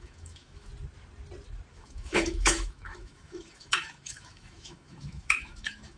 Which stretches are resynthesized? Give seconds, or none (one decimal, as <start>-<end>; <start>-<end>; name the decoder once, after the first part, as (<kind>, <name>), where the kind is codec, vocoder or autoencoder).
0.0-0.7 (autoencoder, DAC-VAE); 1.7-6.0